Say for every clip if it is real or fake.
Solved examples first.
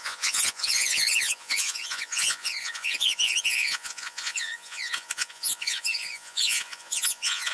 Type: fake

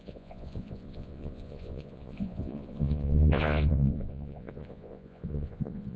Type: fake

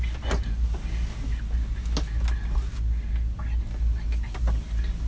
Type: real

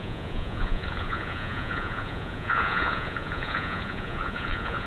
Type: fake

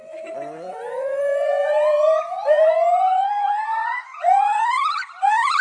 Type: fake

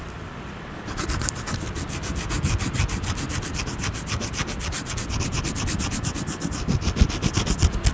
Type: real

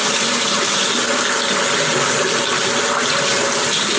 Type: real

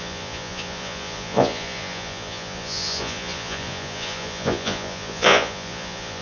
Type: fake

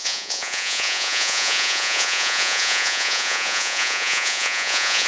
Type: fake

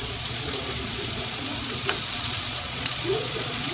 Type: fake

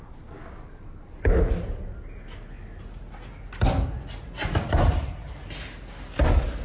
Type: real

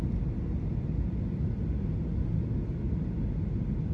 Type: real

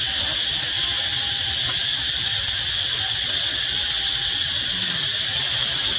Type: real